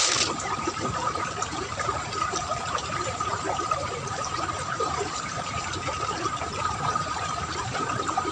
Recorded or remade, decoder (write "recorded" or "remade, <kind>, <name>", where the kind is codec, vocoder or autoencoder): remade, vocoder, BigVGAN v2